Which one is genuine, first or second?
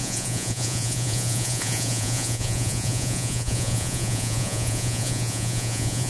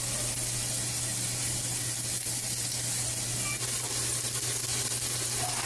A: second